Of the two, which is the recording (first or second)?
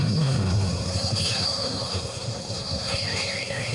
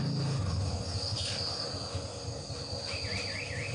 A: second